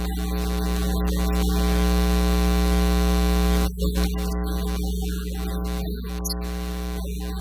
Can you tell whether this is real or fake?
real